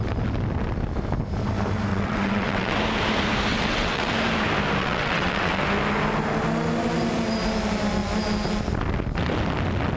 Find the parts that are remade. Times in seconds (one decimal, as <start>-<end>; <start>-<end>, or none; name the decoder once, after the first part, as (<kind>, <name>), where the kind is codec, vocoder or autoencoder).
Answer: 1.9-2.8 (vocoder, WaveNeXt); 3.5-4.1; 4.8-5.6